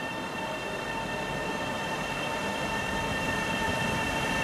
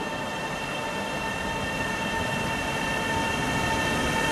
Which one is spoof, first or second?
first